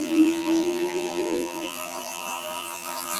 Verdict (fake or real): fake